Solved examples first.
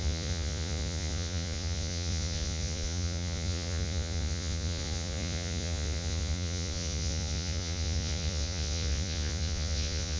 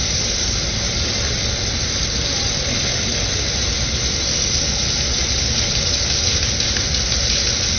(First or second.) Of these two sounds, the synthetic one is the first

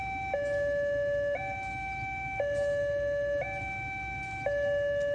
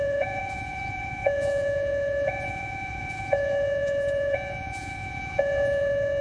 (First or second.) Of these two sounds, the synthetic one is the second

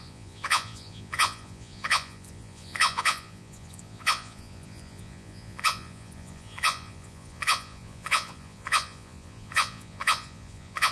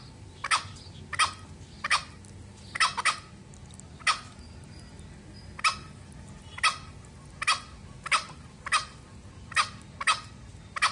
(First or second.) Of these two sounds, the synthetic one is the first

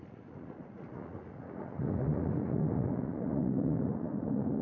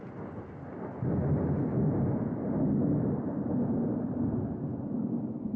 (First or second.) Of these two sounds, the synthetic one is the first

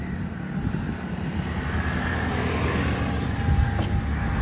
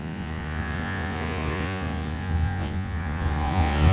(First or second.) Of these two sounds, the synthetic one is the second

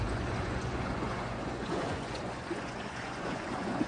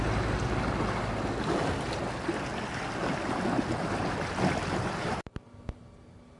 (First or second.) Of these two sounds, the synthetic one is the first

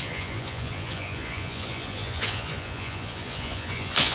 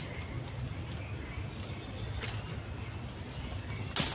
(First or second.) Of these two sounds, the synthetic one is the first